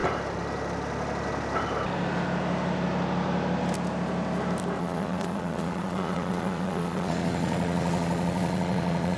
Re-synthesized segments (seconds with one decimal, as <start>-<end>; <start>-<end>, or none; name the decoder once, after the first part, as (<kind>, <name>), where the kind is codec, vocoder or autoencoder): 4.8-9.2 (vocoder, Vocos)